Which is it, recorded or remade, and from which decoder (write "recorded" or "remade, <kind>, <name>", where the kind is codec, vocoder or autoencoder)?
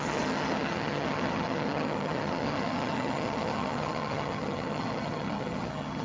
remade, vocoder, HiFi-GAN